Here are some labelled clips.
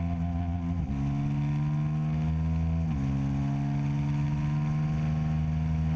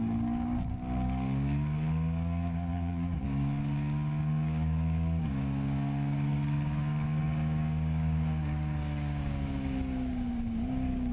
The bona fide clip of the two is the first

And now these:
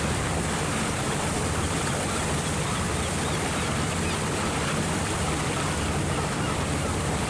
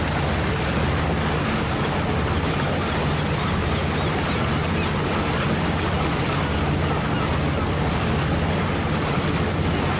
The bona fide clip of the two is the second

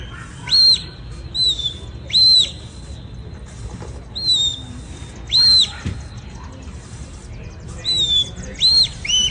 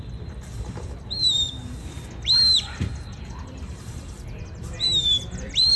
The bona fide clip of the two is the first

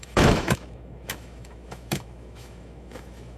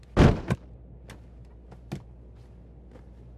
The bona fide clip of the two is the second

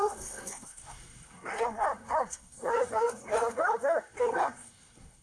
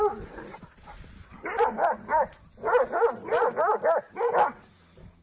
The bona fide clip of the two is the second